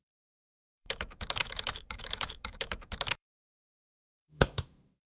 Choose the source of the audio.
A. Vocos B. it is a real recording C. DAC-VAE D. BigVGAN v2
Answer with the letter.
C